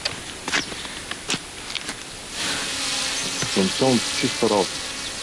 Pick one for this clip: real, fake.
real